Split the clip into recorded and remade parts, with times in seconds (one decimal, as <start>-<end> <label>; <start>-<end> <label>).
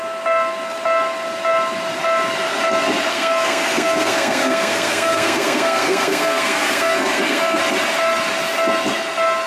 0.0-3.1 recorded; 3.1-7.6 remade; 7.6-9.5 recorded